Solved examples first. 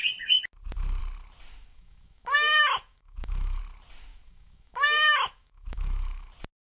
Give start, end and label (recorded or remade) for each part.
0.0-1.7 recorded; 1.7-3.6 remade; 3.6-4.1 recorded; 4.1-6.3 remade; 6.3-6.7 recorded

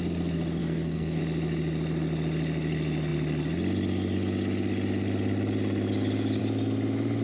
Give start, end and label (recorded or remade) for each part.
0.0-0.6 recorded; 0.6-1.2 remade; 1.2-7.2 recorded